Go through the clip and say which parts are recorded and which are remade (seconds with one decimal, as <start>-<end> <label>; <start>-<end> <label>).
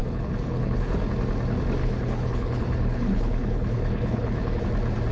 0.0-1.0 remade; 1.0-1.8 recorded; 1.8-4.6 remade; 4.6-5.1 recorded